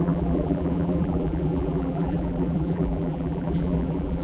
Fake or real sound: fake